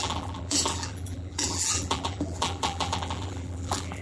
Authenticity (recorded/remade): remade